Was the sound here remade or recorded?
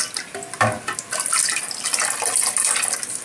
recorded